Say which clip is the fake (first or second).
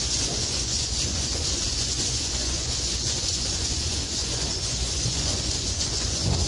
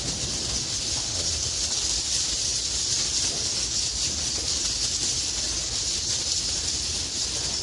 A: first